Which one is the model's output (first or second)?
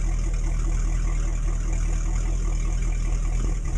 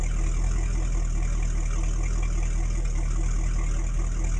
first